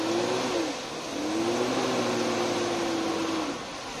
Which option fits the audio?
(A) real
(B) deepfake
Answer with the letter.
A